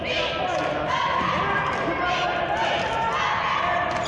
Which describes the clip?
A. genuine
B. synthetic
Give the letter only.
A